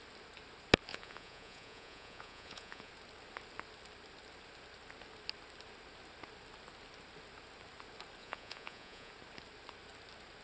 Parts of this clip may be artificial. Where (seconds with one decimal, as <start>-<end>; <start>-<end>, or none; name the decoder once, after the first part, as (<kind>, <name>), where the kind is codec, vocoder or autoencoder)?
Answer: 0.9-2.9 (vocoder, Vocos); 8.2-9.1